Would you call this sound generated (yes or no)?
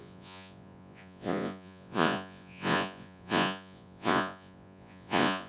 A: yes